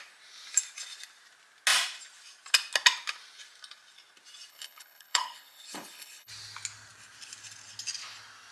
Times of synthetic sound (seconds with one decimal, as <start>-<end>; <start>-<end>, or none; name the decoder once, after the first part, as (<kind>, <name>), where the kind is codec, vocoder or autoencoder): 4.5-6.3 (codec, HILCodec)